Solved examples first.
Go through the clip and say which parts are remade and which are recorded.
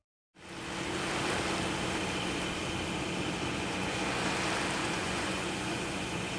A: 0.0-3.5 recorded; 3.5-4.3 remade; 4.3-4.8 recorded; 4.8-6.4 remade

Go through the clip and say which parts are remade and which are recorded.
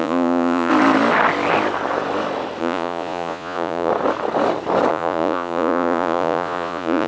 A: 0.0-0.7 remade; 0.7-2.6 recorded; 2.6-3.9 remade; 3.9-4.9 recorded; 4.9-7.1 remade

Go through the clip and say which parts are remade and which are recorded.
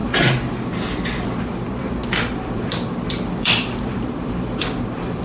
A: 0.0-1.4 recorded; 1.4-5.2 remade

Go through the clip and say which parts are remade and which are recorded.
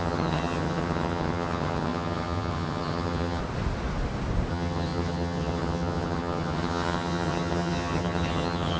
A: 0.0-3.4 remade; 3.4-4.5 recorded; 4.5-8.8 remade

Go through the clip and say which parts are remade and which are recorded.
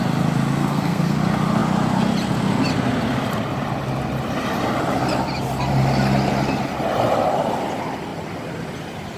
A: 0.0-0.6 recorded; 0.6-1.2 remade; 1.2-9.2 recorded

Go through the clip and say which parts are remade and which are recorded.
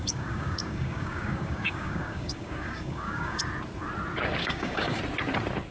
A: 0.0-3.4 remade; 3.4-4.4 recorded; 4.4-5.0 remade; 5.0-5.7 recorded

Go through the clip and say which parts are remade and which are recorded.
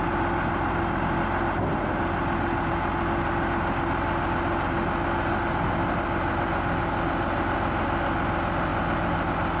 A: 0.0-9.6 recorded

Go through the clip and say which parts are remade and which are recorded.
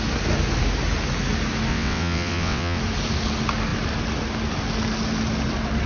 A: 0.0-1.7 recorded; 1.7-2.8 remade; 2.8-5.9 recorded